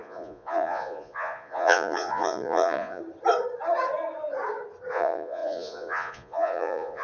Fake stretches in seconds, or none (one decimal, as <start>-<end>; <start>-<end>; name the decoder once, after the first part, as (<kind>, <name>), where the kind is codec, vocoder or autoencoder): 0.0-3.0 (vocoder, Vocos); 4.9-7.0